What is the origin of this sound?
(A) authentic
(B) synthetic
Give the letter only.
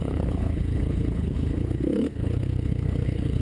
B